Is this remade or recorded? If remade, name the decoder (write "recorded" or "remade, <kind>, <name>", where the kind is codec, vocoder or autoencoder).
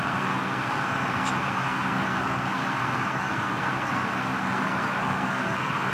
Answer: remade, codec, SNAC